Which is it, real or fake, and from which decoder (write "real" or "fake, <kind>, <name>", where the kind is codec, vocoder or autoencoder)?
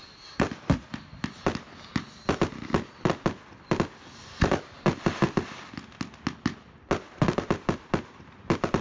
real